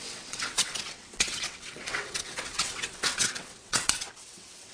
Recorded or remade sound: remade